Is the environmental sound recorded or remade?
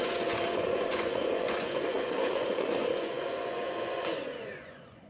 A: remade